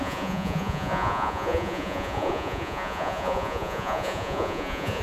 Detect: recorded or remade remade